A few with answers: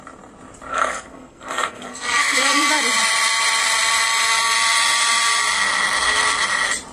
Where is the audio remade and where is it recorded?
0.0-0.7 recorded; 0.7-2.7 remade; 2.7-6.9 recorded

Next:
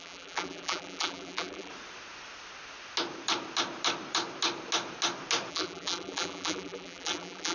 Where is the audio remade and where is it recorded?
0.0-1.7 remade; 1.7-5.5 recorded; 5.5-7.5 remade

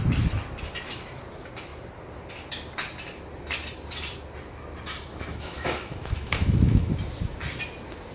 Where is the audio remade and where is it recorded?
0.0-5.1 recorded; 5.1-6.9 remade; 6.9-8.1 recorded

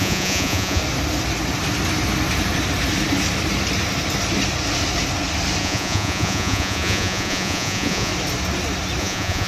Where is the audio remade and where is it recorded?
0.0-0.8 remade; 0.8-5.6 recorded; 5.6-8.1 remade; 8.1-9.0 recorded; 9.0-9.5 remade

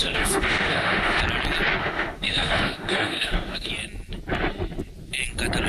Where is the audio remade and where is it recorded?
0.0-1.2 remade; 1.2-1.8 recorded; 1.8-3.7 remade; 3.7-5.7 recorded

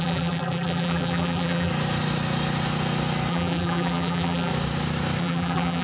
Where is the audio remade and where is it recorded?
0.0-1.7 remade; 1.7-3.3 recorded; 3.3-4.5 remade; 4.5-5.2 recorded; 5.2-5.8 remade

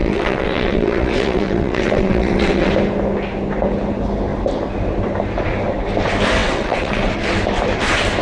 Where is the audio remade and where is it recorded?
0.0-2.7 remade; 2.7-6.4 recorded; 6.4-7.1 remade; 7.1-8.2 recorded